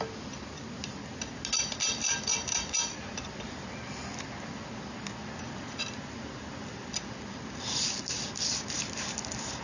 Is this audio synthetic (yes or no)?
no